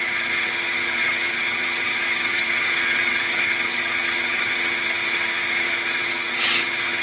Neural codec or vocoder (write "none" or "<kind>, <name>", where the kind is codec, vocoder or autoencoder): vocoder, HiFi-GAN